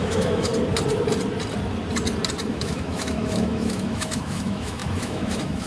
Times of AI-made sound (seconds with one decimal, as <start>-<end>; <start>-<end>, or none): 0.0-0.5; 2.5-5.7